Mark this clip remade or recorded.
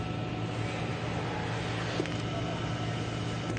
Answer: recorded